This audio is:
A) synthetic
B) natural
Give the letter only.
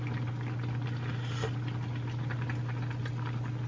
B